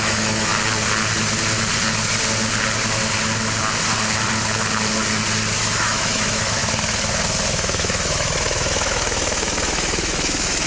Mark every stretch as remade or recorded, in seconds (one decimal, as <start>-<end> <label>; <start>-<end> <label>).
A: 0.0-0.5 remade; 0.5-5.6 recorded; 5.6-6.6 remade; 6.6-7.5 recorded; 7.5-10.7 remade